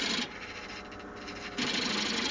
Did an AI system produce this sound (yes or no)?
no